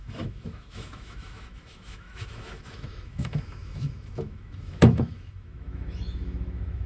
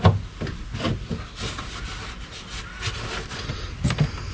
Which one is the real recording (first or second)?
second